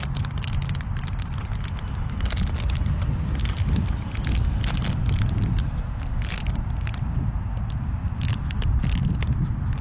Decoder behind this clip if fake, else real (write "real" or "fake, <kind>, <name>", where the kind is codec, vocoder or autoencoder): real